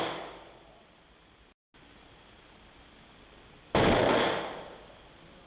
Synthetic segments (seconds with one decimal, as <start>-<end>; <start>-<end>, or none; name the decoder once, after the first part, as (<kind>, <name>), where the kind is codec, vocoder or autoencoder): none